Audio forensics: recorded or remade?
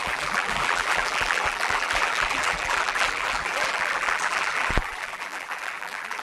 remade